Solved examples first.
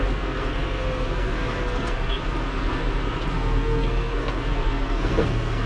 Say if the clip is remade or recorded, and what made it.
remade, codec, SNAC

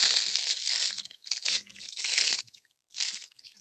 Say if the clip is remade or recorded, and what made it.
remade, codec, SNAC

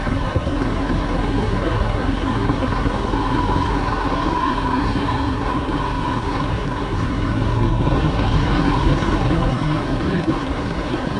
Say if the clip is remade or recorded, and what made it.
remade, codec, SNAC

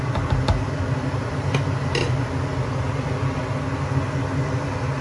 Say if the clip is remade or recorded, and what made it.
recorded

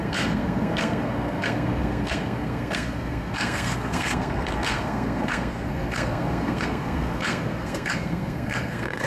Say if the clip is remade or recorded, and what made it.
remade, codec, SNAC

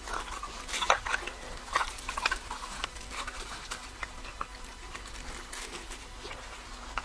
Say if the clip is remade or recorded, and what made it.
recorded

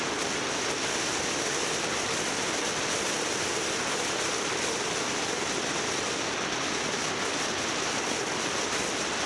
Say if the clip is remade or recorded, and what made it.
recorded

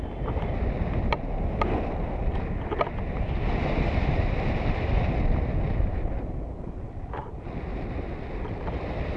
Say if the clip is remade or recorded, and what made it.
recorded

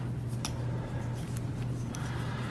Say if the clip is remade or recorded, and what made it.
recorded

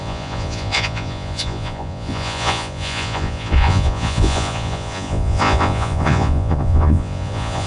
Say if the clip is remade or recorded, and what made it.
remade, vocoder, Vocos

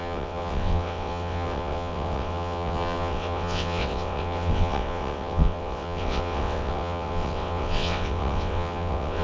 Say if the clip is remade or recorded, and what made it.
remade, vocoder, WaveNeXt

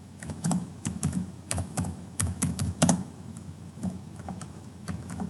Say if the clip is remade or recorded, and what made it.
remade, autoencoder, DAC-VAE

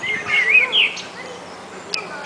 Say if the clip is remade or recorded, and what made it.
recorded